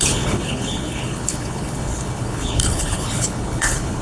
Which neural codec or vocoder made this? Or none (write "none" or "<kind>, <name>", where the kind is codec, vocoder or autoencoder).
codec, HILCodec